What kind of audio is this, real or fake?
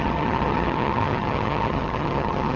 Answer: fake